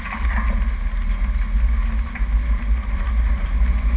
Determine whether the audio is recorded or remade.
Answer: recorded